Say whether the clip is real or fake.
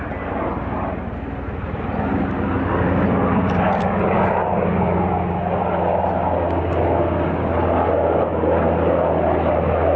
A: real